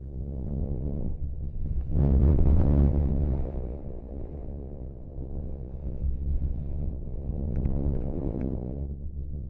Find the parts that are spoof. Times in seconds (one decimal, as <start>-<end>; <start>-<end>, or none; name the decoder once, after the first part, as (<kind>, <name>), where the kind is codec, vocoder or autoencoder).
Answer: 0.0-9.5 (vocoder, WaveNeXt)